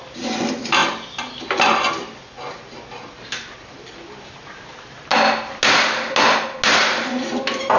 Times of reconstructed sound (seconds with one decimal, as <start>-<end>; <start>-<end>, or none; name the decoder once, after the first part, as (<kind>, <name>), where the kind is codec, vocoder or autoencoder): none